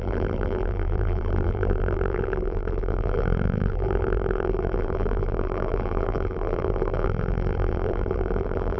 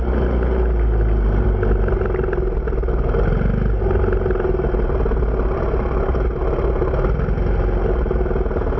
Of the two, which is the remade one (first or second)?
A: first